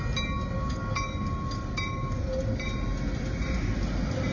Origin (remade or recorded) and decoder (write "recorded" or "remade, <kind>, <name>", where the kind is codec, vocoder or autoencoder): recorded